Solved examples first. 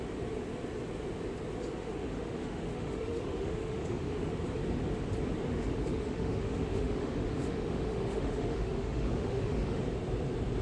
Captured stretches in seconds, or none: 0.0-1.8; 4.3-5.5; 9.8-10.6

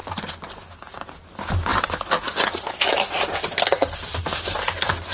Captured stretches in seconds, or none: 0.0-5.1